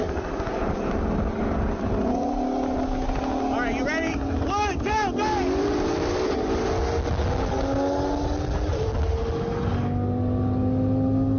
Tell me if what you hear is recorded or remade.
recorded